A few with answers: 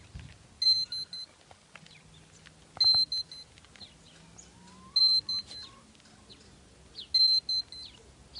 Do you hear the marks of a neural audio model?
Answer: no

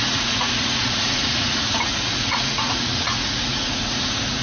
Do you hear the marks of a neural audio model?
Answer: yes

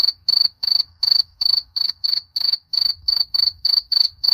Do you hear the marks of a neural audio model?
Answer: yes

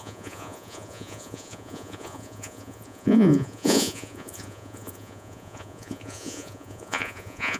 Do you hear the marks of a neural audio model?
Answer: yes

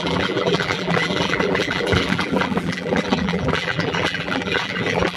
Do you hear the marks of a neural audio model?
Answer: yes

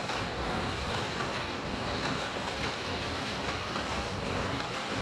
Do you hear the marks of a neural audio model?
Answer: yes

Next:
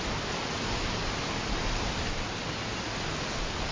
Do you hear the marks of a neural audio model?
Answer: no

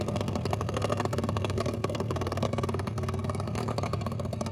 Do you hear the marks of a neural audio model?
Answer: yes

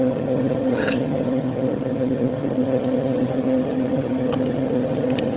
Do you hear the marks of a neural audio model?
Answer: yes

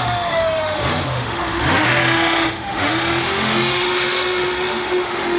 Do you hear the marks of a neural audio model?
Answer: yes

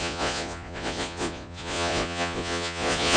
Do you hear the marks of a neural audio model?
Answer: yes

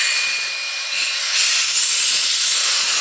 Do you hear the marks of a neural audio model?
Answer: no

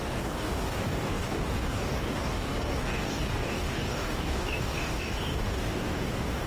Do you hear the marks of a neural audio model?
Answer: yes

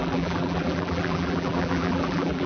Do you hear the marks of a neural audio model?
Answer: yes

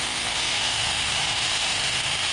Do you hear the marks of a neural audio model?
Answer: yes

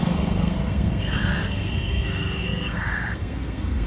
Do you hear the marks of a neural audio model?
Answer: yes